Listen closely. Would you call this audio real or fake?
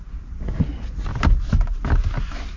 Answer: real